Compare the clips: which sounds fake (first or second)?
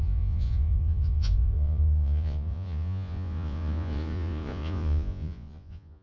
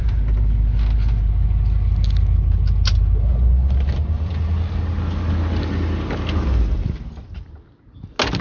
first